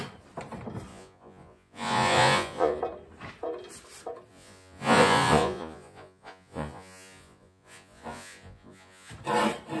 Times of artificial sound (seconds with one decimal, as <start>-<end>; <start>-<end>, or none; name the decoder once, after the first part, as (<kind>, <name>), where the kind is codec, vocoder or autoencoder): 0.9-2.8 (vocoder, Vocos); 4.3-9.1